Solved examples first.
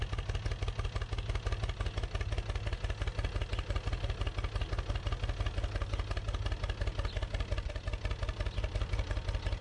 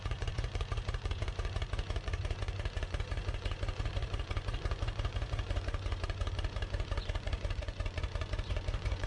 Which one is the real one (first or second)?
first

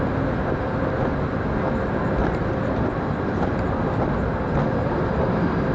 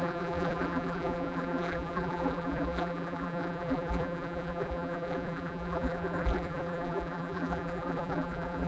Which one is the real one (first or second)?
first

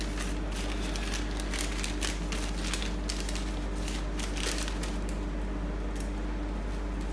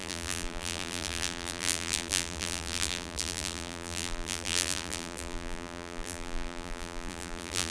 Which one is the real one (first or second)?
first